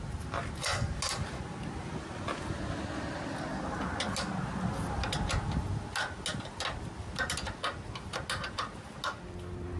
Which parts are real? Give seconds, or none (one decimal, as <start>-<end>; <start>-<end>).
0.0-9.8